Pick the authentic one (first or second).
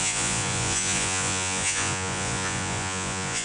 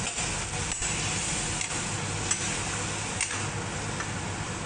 second